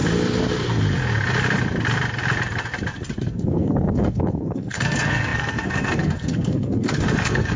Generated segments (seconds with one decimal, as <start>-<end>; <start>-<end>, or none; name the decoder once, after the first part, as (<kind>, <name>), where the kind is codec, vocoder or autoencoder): 3.3-7.6 (codec, SNAC)